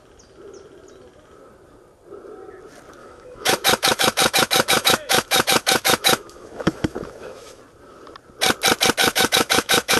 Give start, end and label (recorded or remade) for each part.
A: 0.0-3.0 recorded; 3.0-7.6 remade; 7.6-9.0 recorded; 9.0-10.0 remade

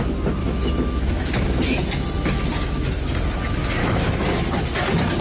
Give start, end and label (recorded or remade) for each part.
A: 0.0-0.4 recorded; 0.4-1.8 remade; 1.8-2.5 recorded; 2.5-3.1 remade; 3.1-3.8 recorded; 3.8-4.6 remade; 4.6-5.2 recorded

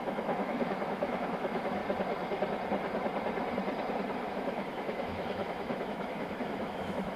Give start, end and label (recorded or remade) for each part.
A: 0.0-1.8 remade; 1.8-4.2 recorded; 4.2-7.2 remade

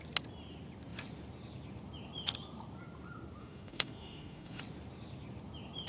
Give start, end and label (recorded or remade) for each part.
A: 0.0-3.4 recorded; 3.4-4.6 remade; 4.6-5.9 recorded